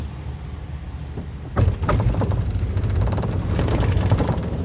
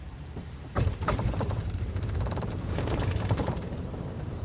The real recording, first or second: first